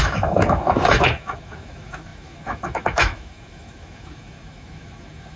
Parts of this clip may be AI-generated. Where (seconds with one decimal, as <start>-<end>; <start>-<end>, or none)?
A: 0.0-5.4